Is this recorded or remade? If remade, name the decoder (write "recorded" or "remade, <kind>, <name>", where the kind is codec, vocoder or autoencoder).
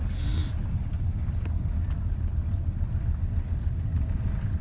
recorded